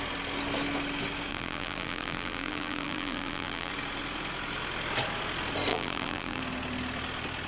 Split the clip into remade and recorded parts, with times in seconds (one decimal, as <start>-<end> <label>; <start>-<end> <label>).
0.0-1.3 recorded; 1.3-3.7 remade; 3.7-5.7 recorded; 5.7-6.4 remade; 6.4-7.5 recorded